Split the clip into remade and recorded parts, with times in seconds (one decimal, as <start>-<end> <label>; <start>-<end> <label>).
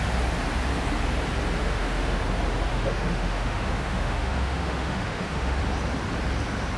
0.0-1.6 recorded; 1.6-2.2 remade; 2.2-2.7 recorded; 2.7-5.6 remade; 5.6-6.8 recorded